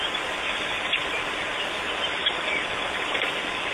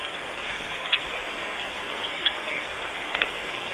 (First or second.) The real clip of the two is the first